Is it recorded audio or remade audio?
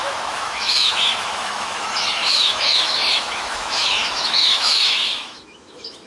remade